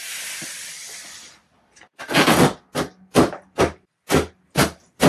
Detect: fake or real fake